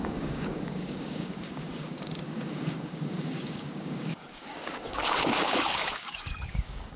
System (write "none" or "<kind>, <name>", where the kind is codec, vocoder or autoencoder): codec, DAC